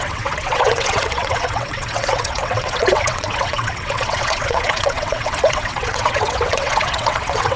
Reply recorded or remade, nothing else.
remade